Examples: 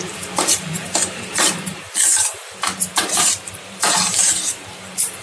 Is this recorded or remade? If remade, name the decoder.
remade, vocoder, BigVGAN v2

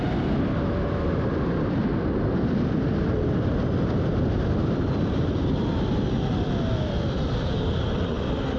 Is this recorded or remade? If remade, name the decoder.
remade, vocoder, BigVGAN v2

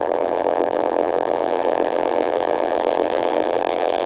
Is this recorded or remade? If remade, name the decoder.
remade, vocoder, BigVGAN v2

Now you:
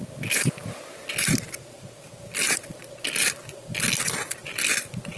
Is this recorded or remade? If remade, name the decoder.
recorded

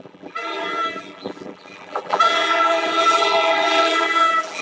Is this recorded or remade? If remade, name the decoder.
remade, vocoder, BigVGAN v2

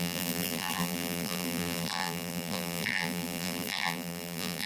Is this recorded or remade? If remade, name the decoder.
remade, vocoder, BigVGAN v2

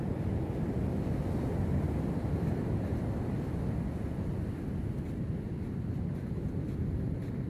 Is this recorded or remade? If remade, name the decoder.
recorded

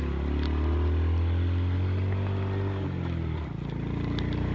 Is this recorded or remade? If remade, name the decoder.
recorded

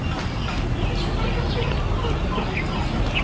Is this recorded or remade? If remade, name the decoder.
recorded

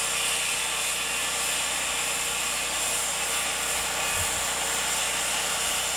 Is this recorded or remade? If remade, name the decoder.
recorded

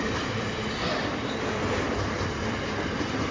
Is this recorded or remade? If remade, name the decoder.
remade, vocoder, BigVGAN v2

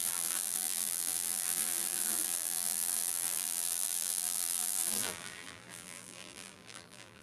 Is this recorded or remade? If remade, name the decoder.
remade, vocoder, BigVGAN v2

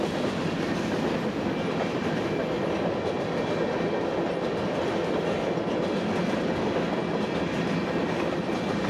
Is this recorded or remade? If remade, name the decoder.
recorded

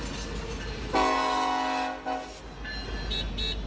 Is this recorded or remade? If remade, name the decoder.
recorded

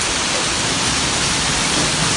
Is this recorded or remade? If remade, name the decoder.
remade, vocoder, BigVGAN v2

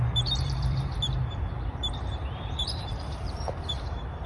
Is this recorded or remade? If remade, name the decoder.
remade, vocoder, BigVGAN v2